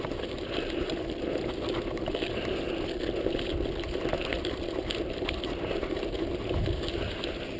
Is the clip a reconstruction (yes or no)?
no